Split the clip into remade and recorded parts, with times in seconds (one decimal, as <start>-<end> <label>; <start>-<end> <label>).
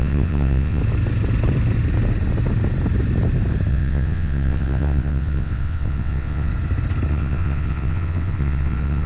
0.0-0.8 remade; 0.8-3.7 recorded; 3.7-6.5 remade; 6.5-7.1 recorded; 7.1-9.1 remade